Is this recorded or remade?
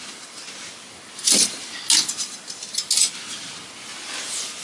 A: recorded